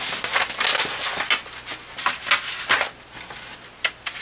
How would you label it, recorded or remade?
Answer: recorded